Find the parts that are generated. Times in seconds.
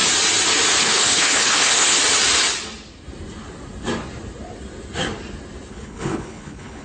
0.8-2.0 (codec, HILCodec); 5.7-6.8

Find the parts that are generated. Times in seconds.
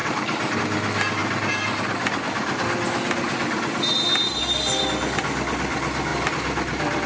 0.0-0.6 (vocoder, BigVGAN v2); 6.1-7.1